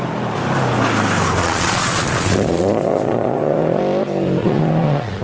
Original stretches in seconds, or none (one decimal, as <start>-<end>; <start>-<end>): 0.0-1.4; 3.8-4.4